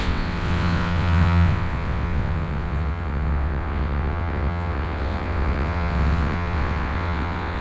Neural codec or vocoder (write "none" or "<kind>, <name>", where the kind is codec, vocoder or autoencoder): vocoder, WaveNeXt